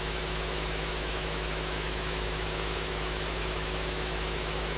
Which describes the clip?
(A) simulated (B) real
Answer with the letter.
A